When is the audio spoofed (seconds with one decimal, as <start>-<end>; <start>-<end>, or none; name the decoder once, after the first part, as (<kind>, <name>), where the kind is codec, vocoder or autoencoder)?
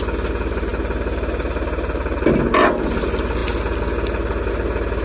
none